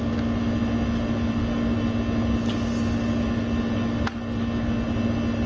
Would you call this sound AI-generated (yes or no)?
no